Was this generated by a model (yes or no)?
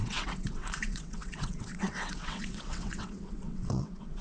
yes